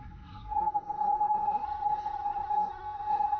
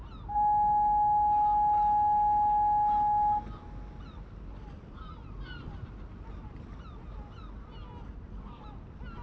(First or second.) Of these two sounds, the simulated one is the first